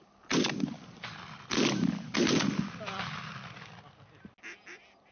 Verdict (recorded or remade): recorded